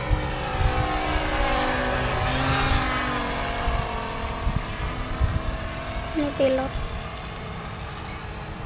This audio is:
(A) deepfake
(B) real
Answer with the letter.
B